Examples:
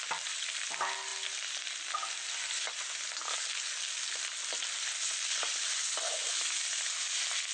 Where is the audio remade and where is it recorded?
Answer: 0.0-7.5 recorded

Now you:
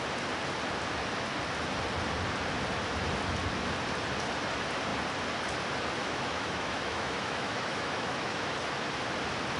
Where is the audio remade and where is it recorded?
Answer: 0.0-6.0 recorded; 6.0-8.5 remade; 8.5-9.6 recorded

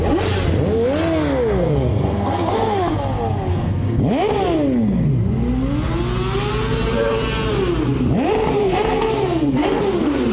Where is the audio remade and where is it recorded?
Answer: 0.0-1.6 recorded; 1.6-2.8 remade; 2.8-3.5 recorded; 3.5-4.0 remade; 4.0-8.6 recorded; 8.6-9.8 remade; 9.8-10.3 recorded

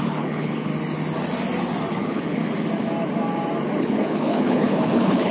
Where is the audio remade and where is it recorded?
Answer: 0.0-0.7 remade; 0.7-1.9 recorded; 1.9-2.4 remade; 2.4-3.8 recorded; 3.8-5.3 remade